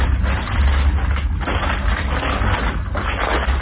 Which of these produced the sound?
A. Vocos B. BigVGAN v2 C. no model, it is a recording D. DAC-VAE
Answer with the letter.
C